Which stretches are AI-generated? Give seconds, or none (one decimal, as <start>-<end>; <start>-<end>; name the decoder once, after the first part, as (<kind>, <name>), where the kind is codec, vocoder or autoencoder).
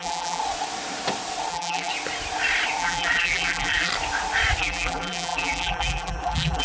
0.0-0.4 (vocoder, BigVGAN v2); 1.5-1.9; 2.8-3.9; 4.6-6.6